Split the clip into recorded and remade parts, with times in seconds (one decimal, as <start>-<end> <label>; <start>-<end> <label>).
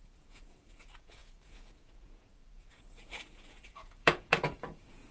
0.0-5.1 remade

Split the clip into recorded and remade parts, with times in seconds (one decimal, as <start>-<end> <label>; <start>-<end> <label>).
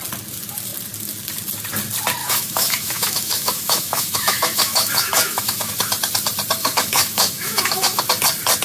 0.0-2.2 recorded; 2.2-5.7 remade; 5.7-6.6 recorded; 6.6-8.0 remade; 8.0-8.6 recorded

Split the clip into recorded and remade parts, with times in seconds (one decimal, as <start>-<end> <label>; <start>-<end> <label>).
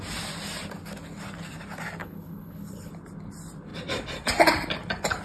0.0-2.0 recorded; 2.0-2.9 remade; 2.9-5.2 recorded